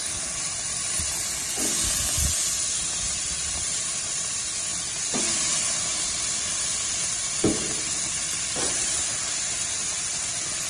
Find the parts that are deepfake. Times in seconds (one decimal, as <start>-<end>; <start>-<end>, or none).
none